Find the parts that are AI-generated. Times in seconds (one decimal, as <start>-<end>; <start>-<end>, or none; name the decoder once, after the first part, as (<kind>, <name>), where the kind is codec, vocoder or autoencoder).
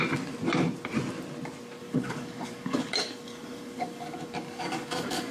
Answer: 1.8-5.3 (codec, DAC)